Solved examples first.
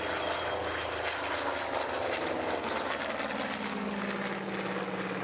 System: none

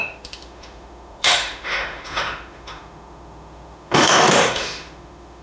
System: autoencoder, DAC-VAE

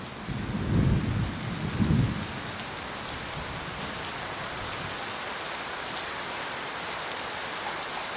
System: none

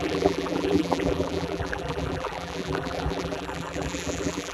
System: vocoder, BigVGAN v2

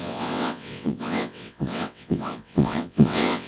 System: vocoder, WaveNeXt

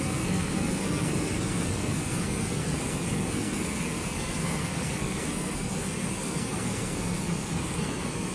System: codec, SNAC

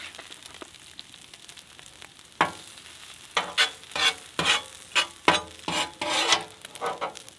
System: none